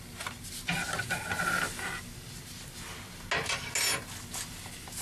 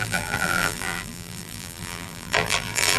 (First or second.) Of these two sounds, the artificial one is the second